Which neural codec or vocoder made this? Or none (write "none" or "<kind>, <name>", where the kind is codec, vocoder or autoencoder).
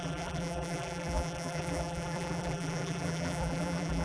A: vocoder, BigVGAN v2